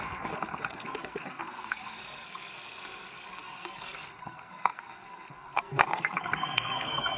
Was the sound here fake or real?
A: fake